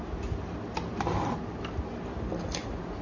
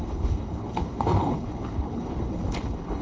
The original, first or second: first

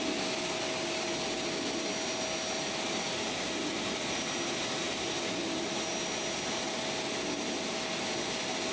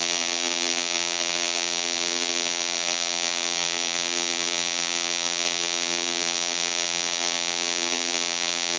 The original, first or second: first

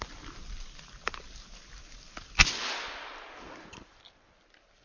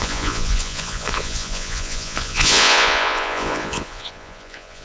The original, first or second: first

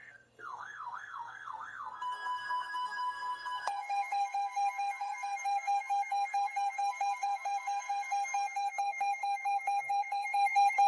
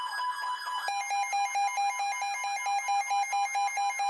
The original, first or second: second